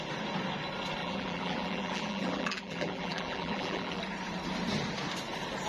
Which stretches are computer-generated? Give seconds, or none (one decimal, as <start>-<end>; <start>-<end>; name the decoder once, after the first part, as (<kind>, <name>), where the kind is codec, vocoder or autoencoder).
1.0-4.0 (vocoder, BigVGAN v2)